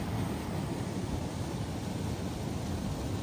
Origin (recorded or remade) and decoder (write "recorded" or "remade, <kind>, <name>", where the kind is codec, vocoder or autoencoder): recorded